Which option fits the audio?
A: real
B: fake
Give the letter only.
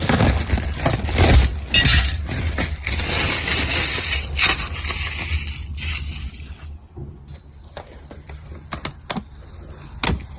A